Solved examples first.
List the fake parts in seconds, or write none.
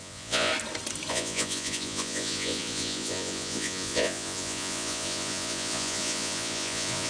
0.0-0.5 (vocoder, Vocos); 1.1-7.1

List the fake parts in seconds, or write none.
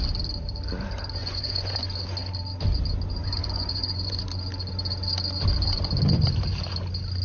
1.2-1.8 (vocoder, Vocos); 3.4-4.2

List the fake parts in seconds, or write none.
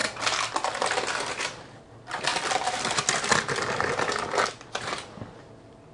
2.3-4.3 (vocoder, BigVGAN v2)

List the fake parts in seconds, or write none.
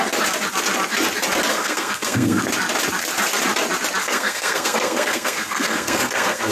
1.5-2.4 (codec, SNAC); 4.0-6.5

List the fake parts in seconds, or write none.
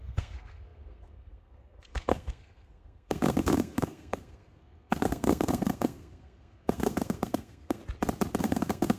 0.0-7.8 (codec, SNAC); 8.4-9.0